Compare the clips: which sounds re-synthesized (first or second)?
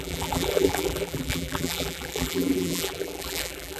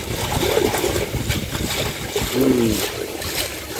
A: first